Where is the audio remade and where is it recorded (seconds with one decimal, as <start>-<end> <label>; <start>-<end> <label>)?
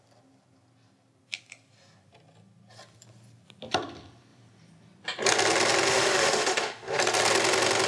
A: 0.0-5.9 recorded; 5.9-7.0 remade; 7.0-7.9 recorded